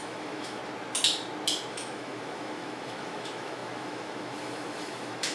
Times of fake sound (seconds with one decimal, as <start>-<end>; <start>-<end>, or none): 0.0-0.6; 1.7-5.3